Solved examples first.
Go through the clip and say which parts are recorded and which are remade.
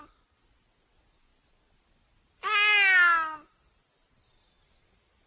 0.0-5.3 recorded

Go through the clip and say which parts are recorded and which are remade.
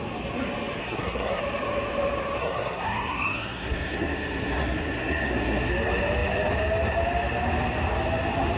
0.0-0.8 recorded; 0.8-1.4 remade; 1.4-2.4 recorded; 2.4-5.7 remade; 5.7-8.6 recorded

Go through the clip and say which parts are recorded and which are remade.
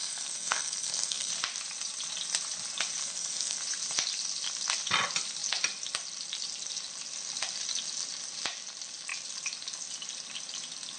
0.0-1.3 remade; 1.3-3.0 recorded; 3.0-3.6 remade; 3.6-11.0 recorded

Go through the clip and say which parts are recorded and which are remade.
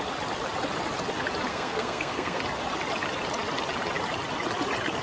0.0-1.5 recorded; 1.5-2.4 remade; 2.4-5.0 recorded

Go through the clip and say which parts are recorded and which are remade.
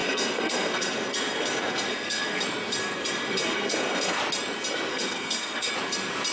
0.0-2.4 remade; 2.4-2.8 recorded; 2.8-4.2 remade; 4.2-4.9 recorded; 4.9-5.7 remade; 5.7-6.3 recorded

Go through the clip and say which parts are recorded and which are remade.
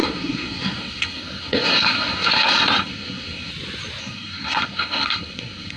0.0-3.5 remade; 3.5-4.0 recorded; 4.0-5.8 remade